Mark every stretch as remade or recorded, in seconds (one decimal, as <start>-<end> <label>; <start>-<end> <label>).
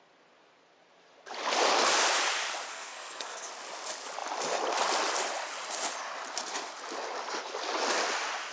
0.0-2.7 recorded; 2.7-3.5 remade; 3.5-8.5 recorded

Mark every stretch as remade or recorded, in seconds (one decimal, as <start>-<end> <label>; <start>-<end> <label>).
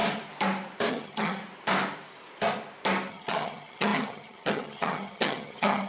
0.0-0.9 recorded; 0.9-1.4 remade; 1.4-3.1 recorded; 3.1-5.9 remade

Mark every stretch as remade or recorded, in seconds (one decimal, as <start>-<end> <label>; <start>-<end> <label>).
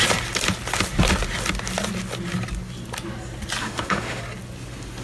0.0-3.6 recorded; 3.6-4.2 remade; 4.2-5.0 recorded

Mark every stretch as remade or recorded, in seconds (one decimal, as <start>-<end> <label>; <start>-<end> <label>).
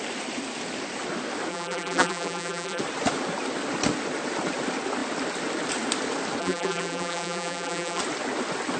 0.0-1.5 recorded; 1.5-2.8 remade; 2.8-6.4 recorded; 6.4-8.0 remade; 8.0-8.8 recorded